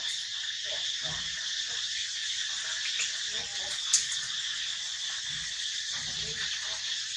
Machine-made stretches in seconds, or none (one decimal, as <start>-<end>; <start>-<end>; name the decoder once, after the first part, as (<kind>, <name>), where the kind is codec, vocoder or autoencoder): 0.6-1.7 (vocoder, BigVGAN v2)